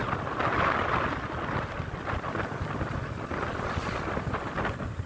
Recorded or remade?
recorded